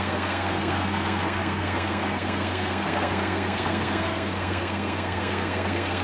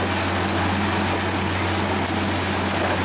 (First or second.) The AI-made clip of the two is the first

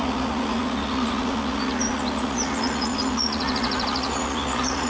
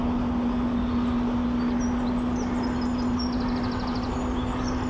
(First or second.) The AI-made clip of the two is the first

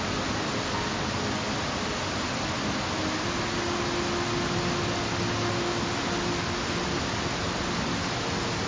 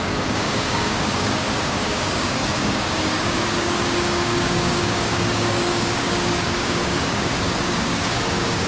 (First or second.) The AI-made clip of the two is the second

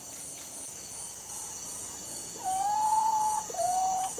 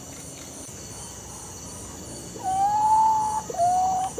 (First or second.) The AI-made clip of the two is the first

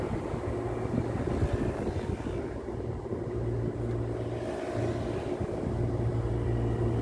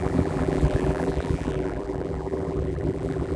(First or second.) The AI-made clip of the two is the second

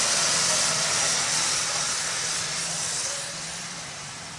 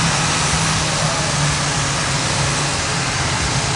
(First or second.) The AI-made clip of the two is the first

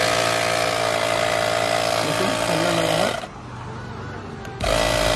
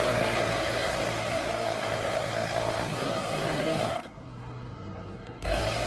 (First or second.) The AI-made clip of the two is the second